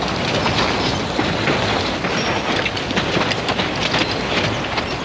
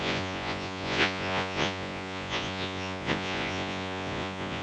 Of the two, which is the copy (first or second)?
second